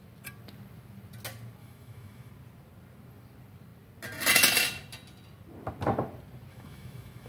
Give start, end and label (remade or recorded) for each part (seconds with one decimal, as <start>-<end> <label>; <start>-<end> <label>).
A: 0.0-1.6 recorded; 1.6-2.3 remade; 2.3-6.5 recorded; 6.5-7.3 remade